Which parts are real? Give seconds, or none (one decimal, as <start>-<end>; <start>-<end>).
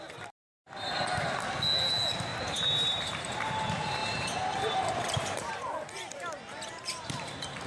0.0-2.3; 3.2-4.0; 5.5-7.7